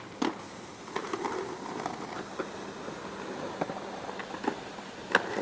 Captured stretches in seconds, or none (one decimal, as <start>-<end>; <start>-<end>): 0.0-5.4